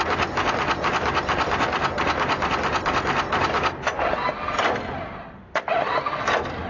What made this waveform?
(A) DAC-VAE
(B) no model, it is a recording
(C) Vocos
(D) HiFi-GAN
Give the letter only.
B